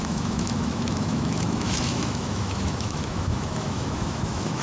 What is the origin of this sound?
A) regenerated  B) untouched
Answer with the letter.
A